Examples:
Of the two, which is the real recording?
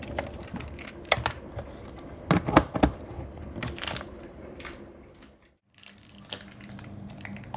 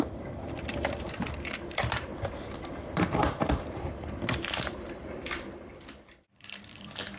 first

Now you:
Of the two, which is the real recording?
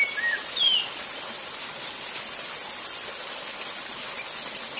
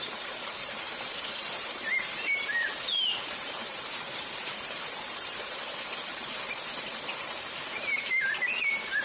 first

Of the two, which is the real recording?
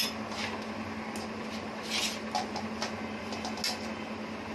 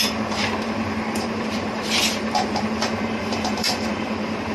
first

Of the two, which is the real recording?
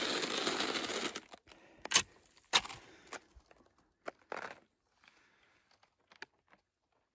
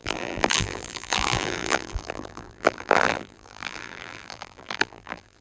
first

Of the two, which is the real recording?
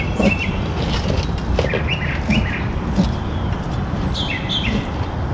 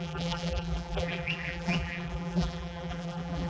first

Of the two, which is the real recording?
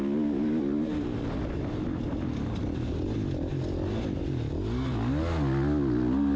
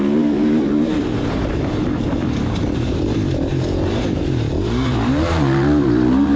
first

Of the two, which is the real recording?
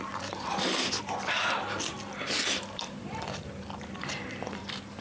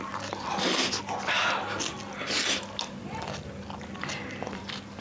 second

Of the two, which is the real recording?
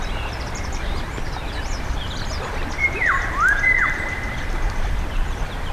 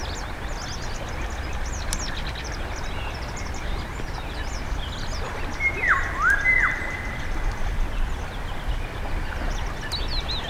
second